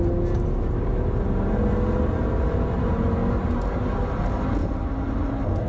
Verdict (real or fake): real